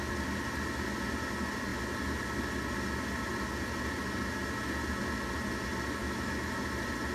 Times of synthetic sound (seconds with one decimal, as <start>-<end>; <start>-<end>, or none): 6.0-6.6